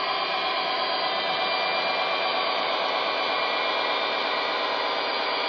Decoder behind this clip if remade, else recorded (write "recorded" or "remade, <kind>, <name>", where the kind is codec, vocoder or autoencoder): recorded